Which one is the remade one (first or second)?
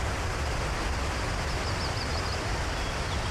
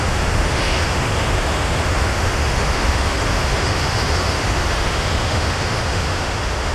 second